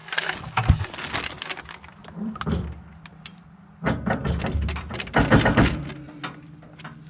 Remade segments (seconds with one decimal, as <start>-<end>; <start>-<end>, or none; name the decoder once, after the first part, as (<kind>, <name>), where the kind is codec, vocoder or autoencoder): 2.0-5.9 (vocoder, BigVGAN v2)